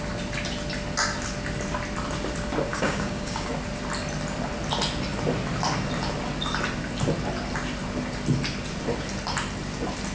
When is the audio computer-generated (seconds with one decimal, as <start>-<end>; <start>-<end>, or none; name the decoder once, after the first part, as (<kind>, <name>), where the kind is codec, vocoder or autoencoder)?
2.7-3.5 (codec, DAC)